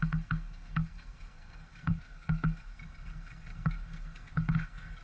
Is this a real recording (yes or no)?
no